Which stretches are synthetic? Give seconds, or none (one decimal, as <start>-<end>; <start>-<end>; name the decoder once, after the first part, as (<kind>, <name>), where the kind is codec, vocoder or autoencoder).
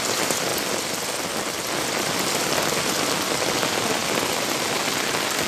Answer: none